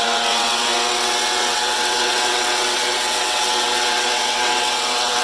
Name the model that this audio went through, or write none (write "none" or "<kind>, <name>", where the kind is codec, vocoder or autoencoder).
vocoder, WaveNeXt